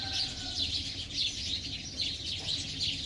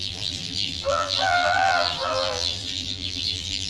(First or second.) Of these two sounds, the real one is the first